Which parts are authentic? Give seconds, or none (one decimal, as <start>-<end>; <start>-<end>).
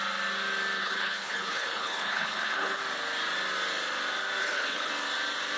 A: 0.0-0.8; 2.8-4.4; 4.9-5.6